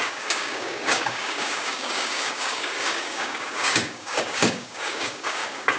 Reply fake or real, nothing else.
fake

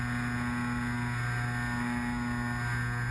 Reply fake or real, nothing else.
real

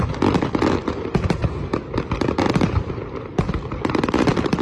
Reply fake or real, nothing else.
fake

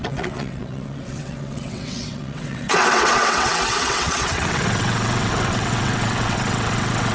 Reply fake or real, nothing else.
fake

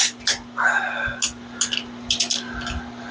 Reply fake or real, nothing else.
real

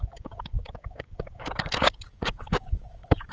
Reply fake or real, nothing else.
fake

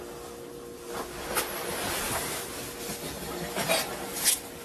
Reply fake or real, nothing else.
real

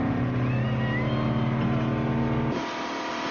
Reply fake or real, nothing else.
real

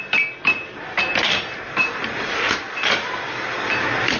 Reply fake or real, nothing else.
real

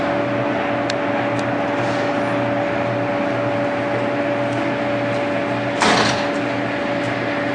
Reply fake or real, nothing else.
real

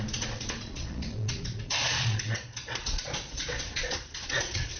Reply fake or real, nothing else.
fake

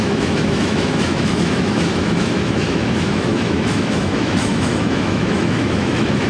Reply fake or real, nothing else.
fake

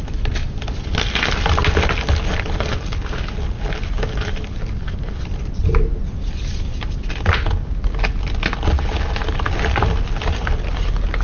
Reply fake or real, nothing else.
real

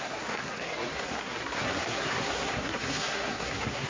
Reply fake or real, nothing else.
fake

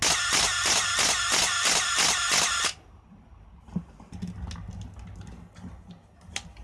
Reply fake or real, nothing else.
real